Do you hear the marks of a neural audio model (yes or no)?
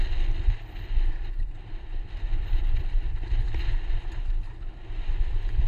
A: yes